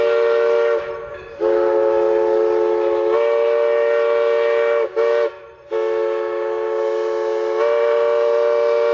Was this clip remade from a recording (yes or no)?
no